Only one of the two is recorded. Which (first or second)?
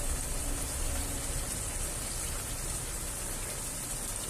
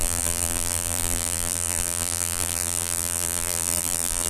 first